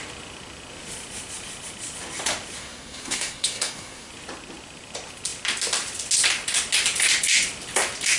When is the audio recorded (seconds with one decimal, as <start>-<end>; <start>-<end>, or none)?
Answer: 0.0-2.6; 4.1-8.2